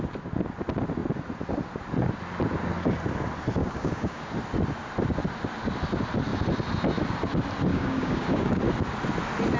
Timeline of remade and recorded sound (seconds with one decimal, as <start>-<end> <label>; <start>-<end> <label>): 0.0-3.6 recorded; 3.6-4.3 remade; 4.3-7.7 recorded; 7.7-8.6 remade; 8.6-9.6 recorded